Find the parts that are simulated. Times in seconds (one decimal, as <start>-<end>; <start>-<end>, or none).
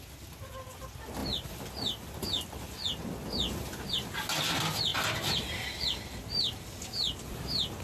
none